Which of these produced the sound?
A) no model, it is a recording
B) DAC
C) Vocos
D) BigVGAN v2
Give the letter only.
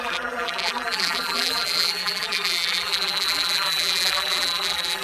D